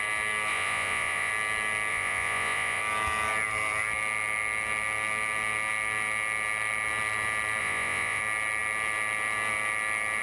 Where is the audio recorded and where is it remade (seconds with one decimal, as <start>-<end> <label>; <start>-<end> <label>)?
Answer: 0.0-0.5 recorded; 0.5-1.3 remade; 1.3-1.9 recorded; 1.9-2.8 remade; 2.8-7.6 recorded; 7.6-8.2 remade; 8.2-10.2 recorded